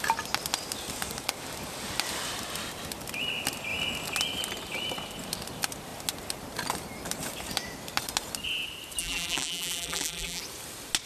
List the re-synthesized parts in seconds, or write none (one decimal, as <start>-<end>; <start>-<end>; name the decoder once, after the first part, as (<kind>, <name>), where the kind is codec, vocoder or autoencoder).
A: 9.0-10.4 (vocoder, BigVGAN v2)